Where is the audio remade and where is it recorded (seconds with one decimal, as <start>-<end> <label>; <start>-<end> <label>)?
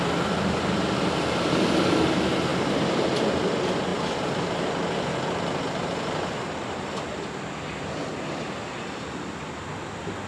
0.0-10.3 recorded